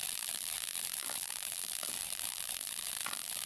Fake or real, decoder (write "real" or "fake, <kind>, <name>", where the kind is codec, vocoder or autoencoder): fake, vocoder, BigVGAN v2